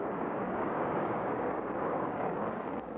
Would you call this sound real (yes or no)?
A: no